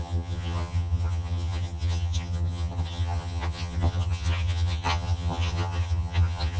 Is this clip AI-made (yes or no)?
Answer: yes